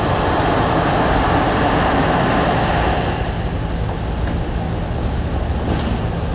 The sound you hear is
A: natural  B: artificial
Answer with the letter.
A